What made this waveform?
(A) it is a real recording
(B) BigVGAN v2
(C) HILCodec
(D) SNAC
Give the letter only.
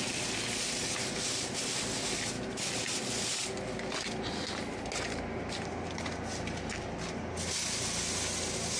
A